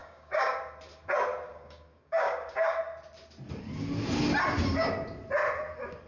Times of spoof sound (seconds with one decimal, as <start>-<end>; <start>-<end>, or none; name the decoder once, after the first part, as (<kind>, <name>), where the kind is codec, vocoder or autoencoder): 0.0-0.6 (codec, DAC); 1.5-2.8